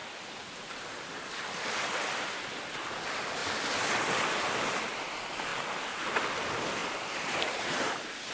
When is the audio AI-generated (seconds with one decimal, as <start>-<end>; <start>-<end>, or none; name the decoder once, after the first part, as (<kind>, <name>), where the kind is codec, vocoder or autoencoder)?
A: 6.8-7.6 (vocoder, BigVGAN v2)